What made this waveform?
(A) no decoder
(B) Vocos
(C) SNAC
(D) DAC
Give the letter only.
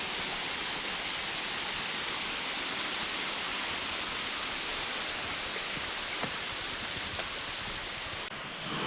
A